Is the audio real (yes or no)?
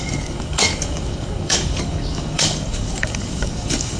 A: no